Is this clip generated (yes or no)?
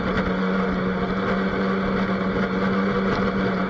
no